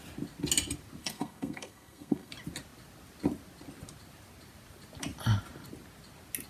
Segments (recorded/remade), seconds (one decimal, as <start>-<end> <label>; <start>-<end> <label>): 0.0-1.0 recorded; 1.0-2.3 remade; 2.3-6.5 recorded